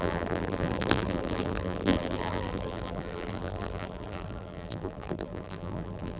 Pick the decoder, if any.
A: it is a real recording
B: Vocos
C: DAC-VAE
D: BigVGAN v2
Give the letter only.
D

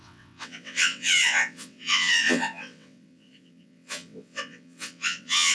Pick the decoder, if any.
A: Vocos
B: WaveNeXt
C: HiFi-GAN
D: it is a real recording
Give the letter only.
B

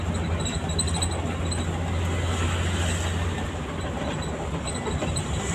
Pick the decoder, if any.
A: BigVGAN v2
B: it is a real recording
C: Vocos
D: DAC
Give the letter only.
B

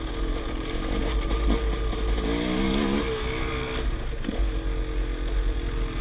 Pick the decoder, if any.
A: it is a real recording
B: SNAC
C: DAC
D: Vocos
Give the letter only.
A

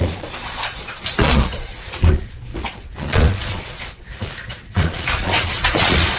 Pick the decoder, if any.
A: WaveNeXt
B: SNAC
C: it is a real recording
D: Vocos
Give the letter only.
D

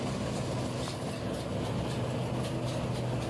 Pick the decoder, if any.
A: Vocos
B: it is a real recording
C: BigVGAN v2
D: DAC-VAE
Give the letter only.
B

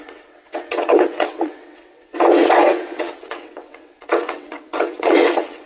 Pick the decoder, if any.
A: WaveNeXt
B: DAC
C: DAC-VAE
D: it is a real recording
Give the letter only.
A